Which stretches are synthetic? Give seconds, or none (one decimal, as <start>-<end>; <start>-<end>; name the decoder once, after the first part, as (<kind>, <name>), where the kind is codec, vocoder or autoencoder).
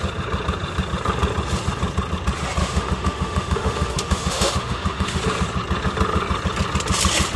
2.6-5.2 (autoencoder, DAC-VAE)